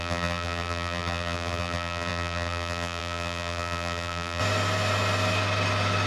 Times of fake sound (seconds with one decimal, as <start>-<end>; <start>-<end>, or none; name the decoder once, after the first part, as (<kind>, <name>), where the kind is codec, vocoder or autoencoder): 0.0-4.4 (vocoder, BigVGAN v2)